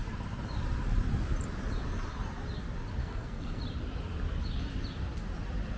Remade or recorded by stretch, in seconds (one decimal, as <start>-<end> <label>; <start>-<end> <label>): 0.0-3.0 recorded; 3.0-3.6 remade; 3.6-5.8 recorded